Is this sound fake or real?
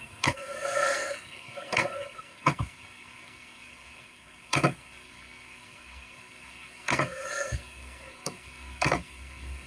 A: fake